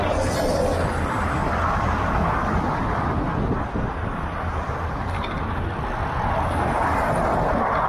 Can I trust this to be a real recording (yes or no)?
yes